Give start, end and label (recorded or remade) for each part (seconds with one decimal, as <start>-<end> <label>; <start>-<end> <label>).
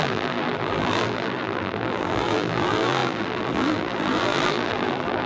0.0-5.3 remade